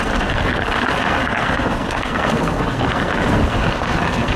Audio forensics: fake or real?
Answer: fake